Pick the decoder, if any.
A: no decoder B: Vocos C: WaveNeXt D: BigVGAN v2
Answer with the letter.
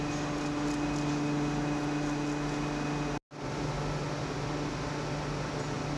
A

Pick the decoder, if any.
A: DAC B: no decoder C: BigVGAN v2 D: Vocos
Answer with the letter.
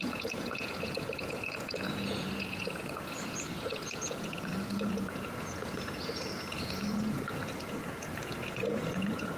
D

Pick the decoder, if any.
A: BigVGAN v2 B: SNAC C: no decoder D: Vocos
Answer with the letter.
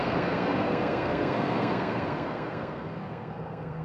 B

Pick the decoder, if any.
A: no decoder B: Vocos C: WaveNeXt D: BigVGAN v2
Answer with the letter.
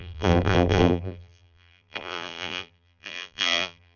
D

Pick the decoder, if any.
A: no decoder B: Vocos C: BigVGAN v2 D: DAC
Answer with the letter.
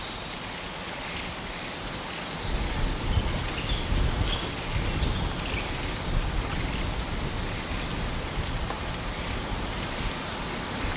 A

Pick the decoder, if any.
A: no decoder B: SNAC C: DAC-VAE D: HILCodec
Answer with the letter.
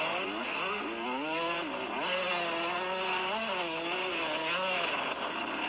A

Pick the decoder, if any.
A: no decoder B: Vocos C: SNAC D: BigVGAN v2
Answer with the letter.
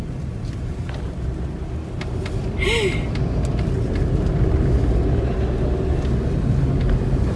A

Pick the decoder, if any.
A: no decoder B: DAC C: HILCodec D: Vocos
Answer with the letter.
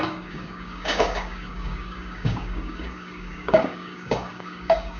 B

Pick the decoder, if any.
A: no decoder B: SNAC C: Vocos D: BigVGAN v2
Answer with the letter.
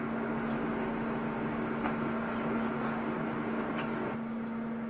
A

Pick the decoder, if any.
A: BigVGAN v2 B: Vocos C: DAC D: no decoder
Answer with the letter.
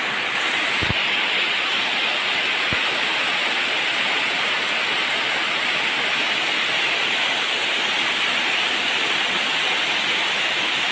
D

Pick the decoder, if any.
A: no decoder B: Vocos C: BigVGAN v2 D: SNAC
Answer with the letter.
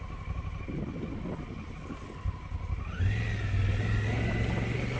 A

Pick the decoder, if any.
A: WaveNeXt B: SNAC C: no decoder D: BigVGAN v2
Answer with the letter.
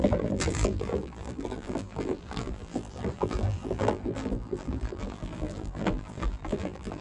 D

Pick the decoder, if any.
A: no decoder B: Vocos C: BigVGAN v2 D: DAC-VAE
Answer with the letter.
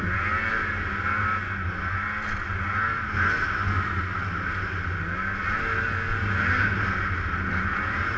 A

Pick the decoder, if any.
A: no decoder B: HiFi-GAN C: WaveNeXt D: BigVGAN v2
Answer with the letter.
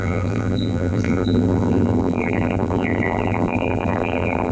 D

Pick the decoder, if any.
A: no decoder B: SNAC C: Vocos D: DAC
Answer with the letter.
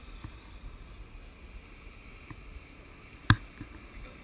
A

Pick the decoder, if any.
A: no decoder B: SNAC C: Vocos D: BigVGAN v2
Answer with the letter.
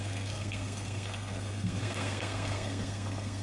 B